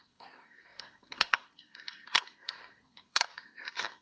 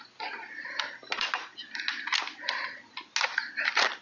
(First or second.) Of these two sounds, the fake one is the first